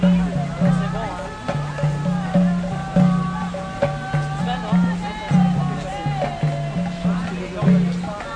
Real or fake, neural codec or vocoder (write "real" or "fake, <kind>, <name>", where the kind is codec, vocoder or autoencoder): real